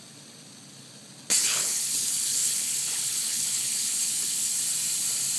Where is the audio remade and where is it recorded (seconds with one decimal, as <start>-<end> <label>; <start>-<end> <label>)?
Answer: 0.0-1.4 recorded; 1.4-4.6 remade; 4.6-5.4 recorded